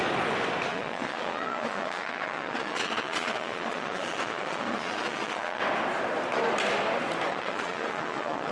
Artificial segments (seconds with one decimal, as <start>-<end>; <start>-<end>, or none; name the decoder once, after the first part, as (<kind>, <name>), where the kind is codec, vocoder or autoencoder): 0.7-5.6 (vocoder, Vocos); 7.3-8.5